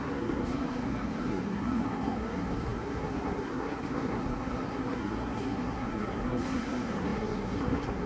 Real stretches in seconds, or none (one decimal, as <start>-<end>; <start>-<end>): none